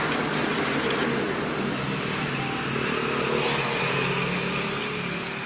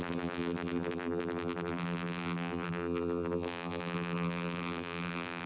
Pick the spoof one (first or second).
second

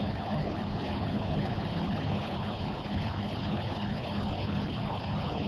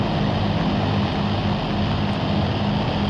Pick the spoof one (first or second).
first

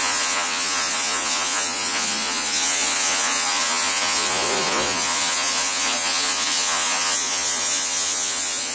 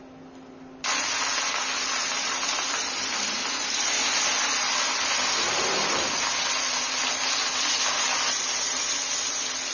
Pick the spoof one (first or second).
first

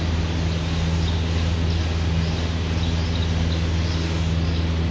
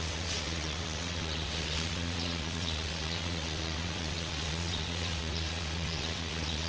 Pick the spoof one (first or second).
second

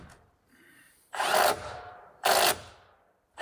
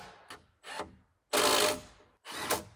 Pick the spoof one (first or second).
first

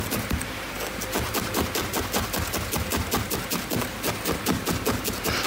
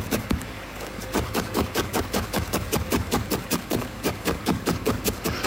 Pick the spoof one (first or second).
second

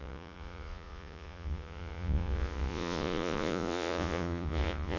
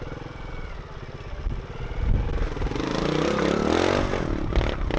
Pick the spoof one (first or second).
first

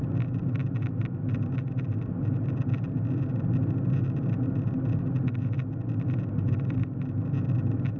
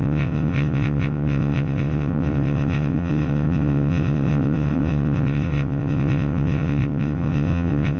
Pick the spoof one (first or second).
second